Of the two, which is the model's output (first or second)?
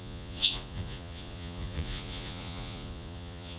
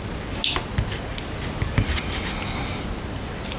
first